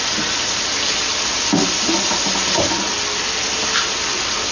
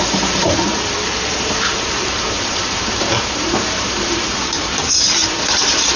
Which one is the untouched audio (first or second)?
first